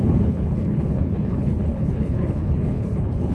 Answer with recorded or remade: remade